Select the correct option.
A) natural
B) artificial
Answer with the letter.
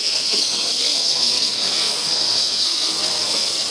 B